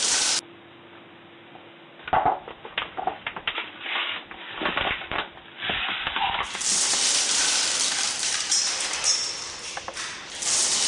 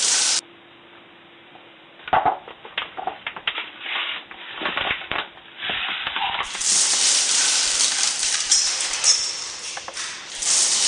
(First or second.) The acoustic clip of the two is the first